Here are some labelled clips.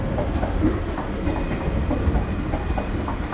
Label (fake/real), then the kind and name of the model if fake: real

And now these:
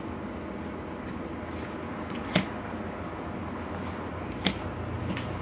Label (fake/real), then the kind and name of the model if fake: real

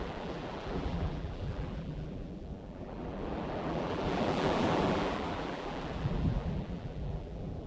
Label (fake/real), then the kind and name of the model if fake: fake, vocoder, BigVGAN v2